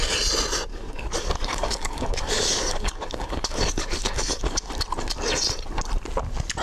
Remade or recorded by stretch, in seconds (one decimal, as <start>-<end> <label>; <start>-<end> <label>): 0.0-0.7 recorded; 0.7-4.7 remade; 4.7-6.6 recorded